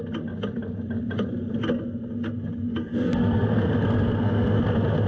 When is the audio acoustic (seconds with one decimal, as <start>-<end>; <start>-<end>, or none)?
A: 0.0-2.8; 4.6-5.1